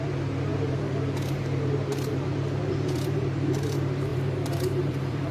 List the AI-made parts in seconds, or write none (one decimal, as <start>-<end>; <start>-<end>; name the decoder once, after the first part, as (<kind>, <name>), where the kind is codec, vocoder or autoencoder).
0.0-5.3 (vocoder, BigVGAN v2)